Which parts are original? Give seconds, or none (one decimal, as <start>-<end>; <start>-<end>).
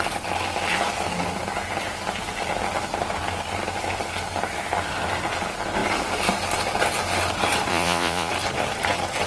0.0-7.7; 8.3-9.3